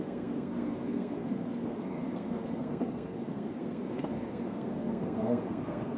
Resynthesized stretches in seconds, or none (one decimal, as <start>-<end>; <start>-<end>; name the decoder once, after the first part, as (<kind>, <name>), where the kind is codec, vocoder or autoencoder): 0.0-6.0 (codec, SNAC)